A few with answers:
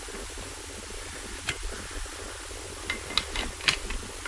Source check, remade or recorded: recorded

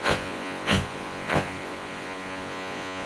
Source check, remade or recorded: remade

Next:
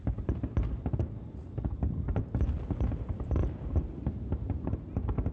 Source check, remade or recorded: recorded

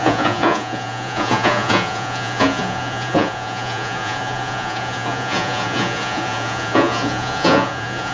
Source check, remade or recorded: remade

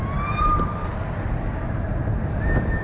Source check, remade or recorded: recorded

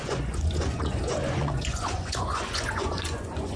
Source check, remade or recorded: remade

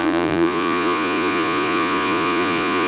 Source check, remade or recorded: remade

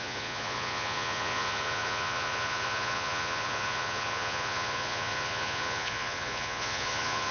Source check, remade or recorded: remade